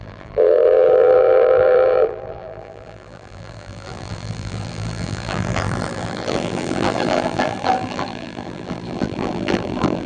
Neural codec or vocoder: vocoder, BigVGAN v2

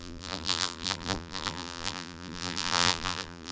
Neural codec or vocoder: vocoder, BigVGAN v2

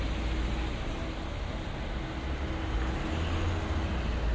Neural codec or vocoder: none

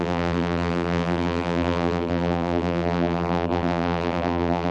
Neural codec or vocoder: vocoder, BigVGAN v2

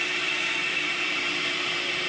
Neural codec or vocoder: vocoder, BigVGAN v2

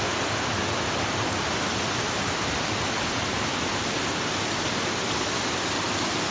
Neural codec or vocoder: none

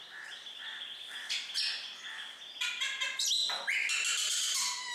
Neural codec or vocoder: none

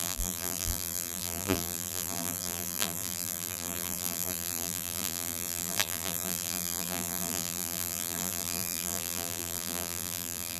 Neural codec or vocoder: vocoder, BigVGAN v2